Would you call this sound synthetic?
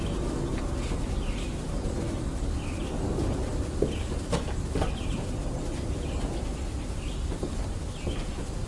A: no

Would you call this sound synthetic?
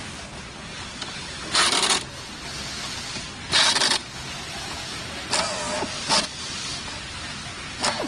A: no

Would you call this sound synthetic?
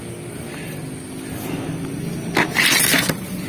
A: no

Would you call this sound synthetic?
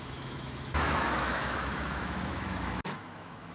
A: yes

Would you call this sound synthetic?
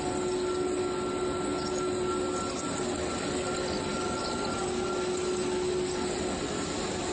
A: no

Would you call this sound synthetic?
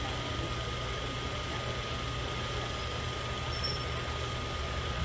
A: no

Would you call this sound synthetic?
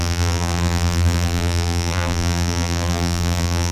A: yes